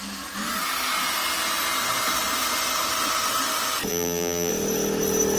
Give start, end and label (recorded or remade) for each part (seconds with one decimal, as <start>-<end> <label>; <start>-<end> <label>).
0.0-3.9 recorded; 3.9-4.5 remade; 4.5-5.4 recorded

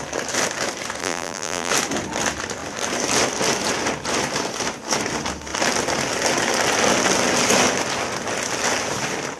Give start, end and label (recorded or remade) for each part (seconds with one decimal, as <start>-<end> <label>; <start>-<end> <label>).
0.0-1.0 recorded; 1.0-1.7 remade; 1.7-9.4 recorded

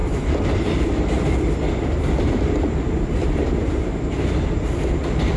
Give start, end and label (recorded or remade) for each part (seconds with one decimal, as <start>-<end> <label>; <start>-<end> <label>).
0.0-5.4 recorded

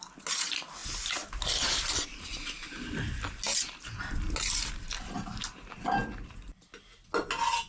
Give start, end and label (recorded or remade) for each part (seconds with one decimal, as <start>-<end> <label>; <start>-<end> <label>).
0.0-7.7 recorded

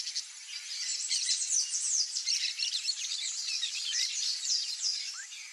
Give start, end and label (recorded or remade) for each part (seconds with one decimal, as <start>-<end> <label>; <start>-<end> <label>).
0.0-0.9 recorded; 0.9-4.2 remade; 4.2-5.5 recorded

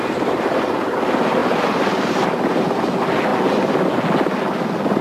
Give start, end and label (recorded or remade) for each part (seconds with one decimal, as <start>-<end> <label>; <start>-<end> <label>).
0.0-3.3 remade; 3.3-5.0 recorded

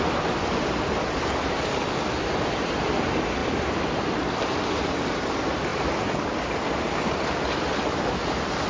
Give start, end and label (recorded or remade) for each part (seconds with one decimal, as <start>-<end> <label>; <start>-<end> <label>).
0.0-3.4 recorded; 3.4-4.6 remade; 4.6-5.7 recorded; 5.7-6.3 remade; 6.3-8.7 recorded

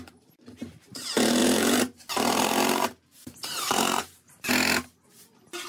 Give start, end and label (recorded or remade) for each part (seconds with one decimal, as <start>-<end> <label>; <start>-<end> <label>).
0.0-1.4 recorded; 1.4-4.5 remade; 4.5-5.7 recorded